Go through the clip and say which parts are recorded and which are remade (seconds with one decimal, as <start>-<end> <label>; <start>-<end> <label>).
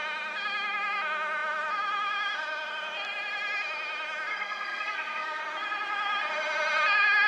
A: 0.0-4.3 recorded; 4.3-5.4 remade; 5.4-7.3 recorded